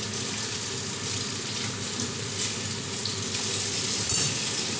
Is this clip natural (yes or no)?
yes